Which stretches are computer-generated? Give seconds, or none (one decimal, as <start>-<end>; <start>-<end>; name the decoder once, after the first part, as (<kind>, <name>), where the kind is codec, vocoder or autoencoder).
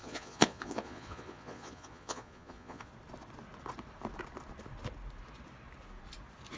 0.0-2.9 (vocoder, Vocos)